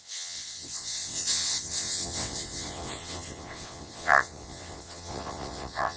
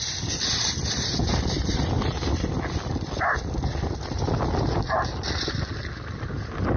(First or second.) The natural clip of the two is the second